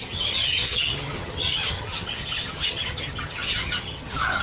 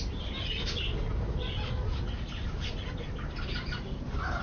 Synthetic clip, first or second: first